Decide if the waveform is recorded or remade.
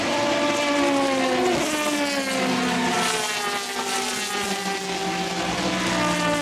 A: recorded